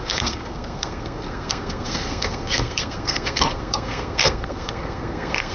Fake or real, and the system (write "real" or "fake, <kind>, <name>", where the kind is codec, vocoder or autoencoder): fake, codec, SNAC